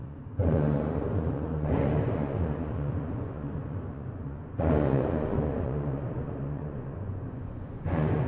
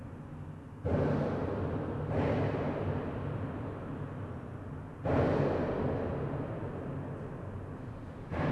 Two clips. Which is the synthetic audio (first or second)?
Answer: first